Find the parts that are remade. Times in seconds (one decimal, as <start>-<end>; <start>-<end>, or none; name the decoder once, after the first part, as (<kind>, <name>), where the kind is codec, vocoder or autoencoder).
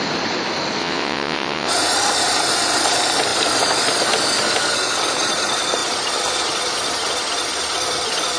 0.8-1.7 (vocoder, WaveNeXt)